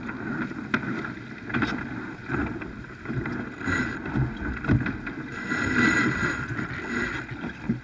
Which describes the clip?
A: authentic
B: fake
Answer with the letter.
A